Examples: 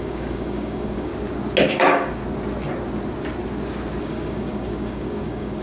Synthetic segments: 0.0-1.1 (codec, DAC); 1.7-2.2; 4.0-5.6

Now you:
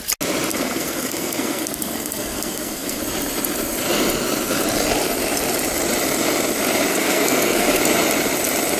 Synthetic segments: 0.5-3.0 (codec, SNAC); 6.9-7.8

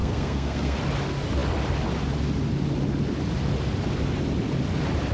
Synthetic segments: 0.0-0.8 (codec, SNAC)

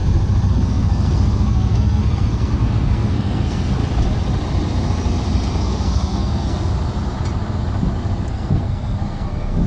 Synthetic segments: 0.5-3.8 (codec, SNAC); 5.6-6.7; 8.3-9.7

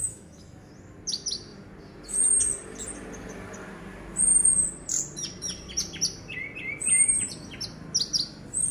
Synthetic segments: 0.0-0.7 (autoencoder, DAC-VAE)

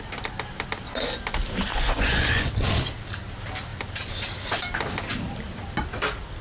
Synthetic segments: 1.7-2.5 (vocoder, Vocos)

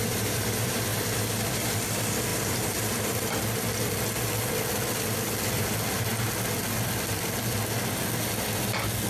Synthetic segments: none